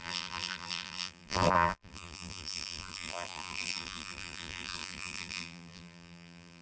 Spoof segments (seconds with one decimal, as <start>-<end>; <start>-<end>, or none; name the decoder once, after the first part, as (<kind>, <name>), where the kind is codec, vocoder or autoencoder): 0.0-6.6 (vocoder, BigVGAN v2)